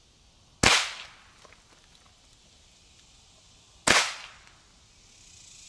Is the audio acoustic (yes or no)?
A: yes